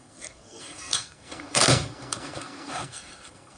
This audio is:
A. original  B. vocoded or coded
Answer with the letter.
B